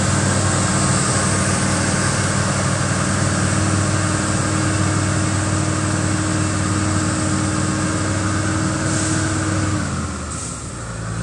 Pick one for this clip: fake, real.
real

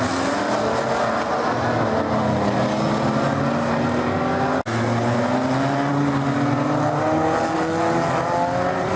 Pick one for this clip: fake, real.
real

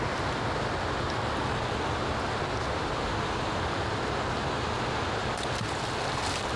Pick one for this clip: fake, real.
real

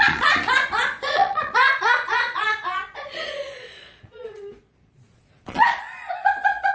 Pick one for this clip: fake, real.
fake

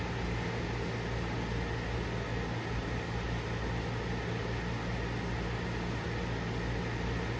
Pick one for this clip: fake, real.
real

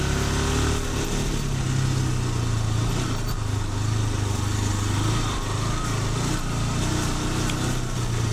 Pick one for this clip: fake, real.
real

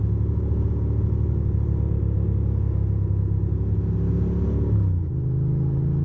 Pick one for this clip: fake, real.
real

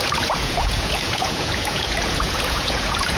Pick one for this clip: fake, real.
fake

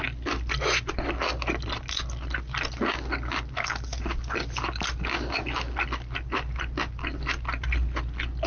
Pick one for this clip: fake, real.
real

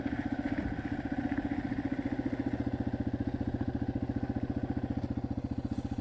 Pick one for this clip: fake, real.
real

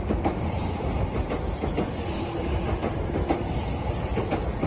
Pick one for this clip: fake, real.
real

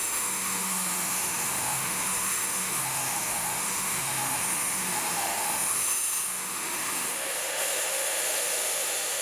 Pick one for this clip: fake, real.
fake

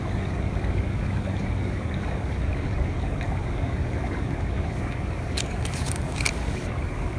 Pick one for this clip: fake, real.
fake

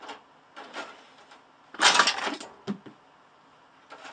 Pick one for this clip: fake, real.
real